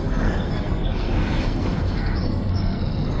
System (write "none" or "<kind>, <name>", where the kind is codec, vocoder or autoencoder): codec, SNAC